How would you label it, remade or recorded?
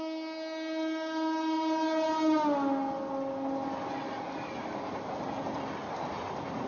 recorded